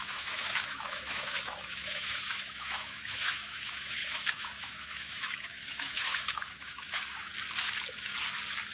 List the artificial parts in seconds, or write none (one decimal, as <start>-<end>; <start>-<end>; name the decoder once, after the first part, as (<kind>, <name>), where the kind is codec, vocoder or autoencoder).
0.0-7.3 (autoencoder, DAC-VAE)